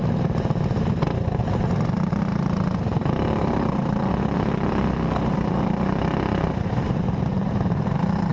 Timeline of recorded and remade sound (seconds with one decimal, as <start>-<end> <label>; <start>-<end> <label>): 0.0-2.3 recorded; 2.3-4.1 remade; 4.1-6.3 recorded; 6.3-8.3 remade